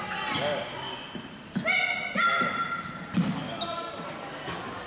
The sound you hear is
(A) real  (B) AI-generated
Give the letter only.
A